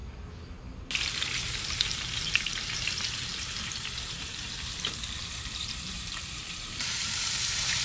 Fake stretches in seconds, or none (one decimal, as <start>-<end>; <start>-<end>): 1.4-3.3; 4.1-7.8